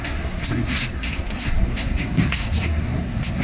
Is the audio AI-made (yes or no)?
yes